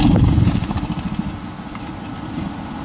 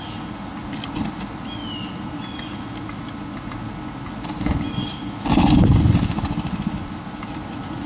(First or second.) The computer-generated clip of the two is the first